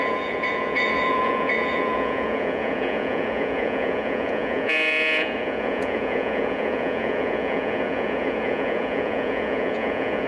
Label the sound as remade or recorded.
remade